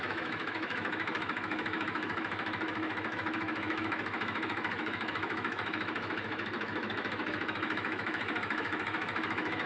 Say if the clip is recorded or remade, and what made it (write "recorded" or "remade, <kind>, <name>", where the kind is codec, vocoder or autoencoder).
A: remade, autoencoder, DAC-VAE